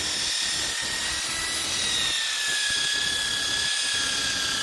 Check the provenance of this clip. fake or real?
real